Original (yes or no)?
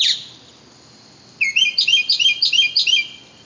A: yes